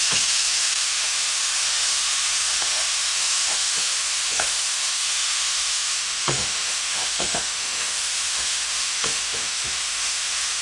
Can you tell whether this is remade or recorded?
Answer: remade